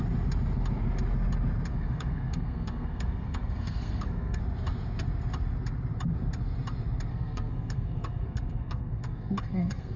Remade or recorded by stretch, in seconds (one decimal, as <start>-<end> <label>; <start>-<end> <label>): 0.0-1.7 recorded; 1.7-4.4 remade; 4.4-7.1 recorded; 7.1-10.0 remade